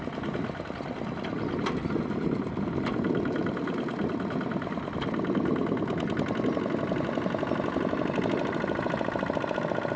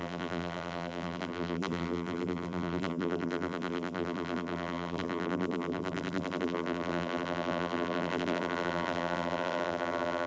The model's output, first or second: second